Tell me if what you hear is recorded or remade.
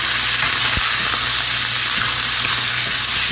recorded